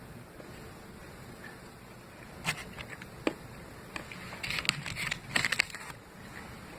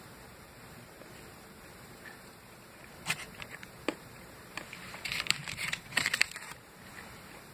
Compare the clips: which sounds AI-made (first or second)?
second